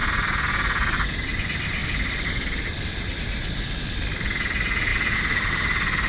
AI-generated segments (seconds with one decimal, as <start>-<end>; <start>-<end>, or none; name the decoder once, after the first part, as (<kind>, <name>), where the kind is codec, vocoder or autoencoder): 1.8-3.3 (vocoder, BigVGAN v2)